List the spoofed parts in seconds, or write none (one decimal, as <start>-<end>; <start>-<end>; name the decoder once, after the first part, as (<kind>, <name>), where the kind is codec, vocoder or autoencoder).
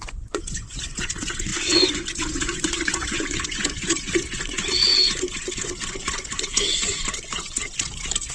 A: 0.0-8.3 (vocoder, Vocos)